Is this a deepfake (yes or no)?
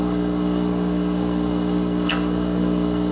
yes